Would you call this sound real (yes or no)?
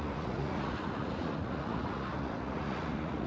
no